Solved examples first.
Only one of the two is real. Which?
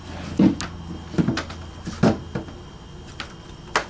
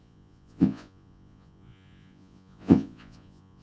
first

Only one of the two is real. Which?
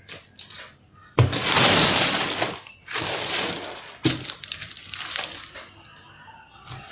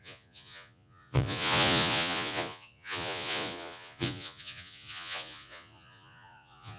first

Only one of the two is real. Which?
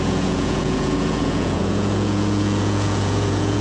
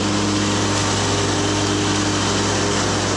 second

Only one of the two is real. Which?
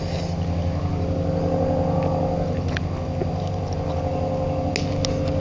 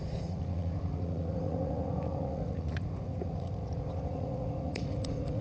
first